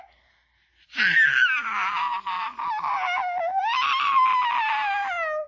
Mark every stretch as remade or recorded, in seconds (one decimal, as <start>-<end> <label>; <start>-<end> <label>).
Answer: 0.0-5.5 recorded